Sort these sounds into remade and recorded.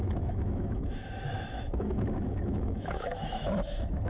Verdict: remade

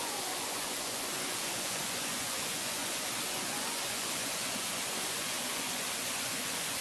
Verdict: remade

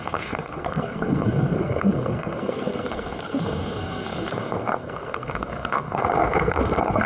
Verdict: remade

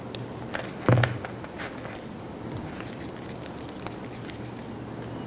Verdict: recorded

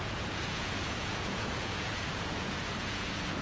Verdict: remade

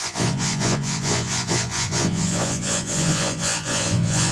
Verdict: remade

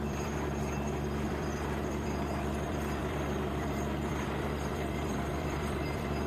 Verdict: remade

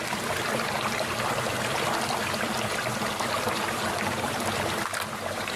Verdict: recorded